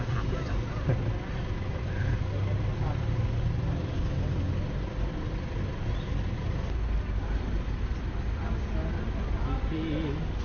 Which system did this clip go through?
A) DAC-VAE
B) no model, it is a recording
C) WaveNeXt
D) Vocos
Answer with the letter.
B